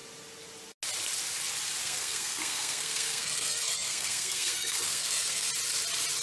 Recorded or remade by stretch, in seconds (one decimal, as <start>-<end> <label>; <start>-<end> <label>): 0.0-1.8 recorded; 1.8-5.5 remade; 5.5-6.2 recorded